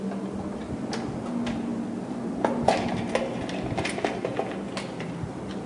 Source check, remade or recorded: recorded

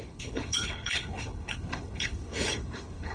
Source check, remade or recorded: remade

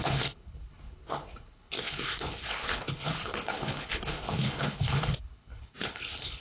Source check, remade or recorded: remade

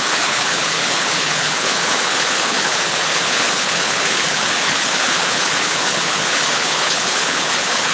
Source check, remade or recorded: remade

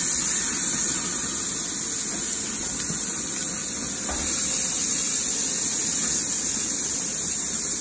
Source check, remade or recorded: recorded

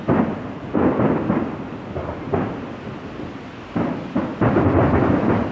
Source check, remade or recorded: recorded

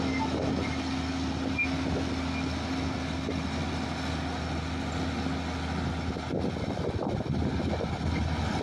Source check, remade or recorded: recorded